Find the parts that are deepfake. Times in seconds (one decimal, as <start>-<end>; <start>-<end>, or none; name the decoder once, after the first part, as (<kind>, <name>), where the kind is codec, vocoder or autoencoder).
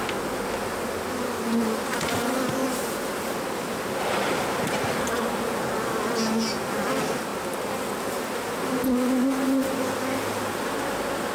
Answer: 2.6-4.9 (vocoder, BigVGAN v2)